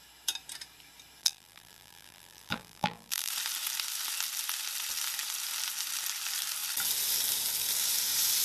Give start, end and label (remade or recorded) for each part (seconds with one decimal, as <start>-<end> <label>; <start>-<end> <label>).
0.0-1.2 recorded; 1.2-3.3 remade; 3.3-8.4 recorded